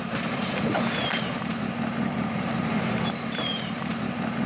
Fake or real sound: fake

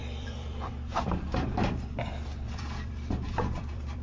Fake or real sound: fake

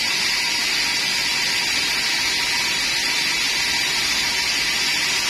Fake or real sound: real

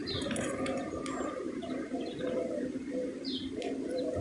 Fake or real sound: fake